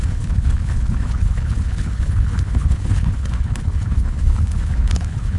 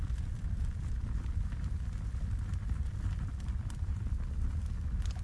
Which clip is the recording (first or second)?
second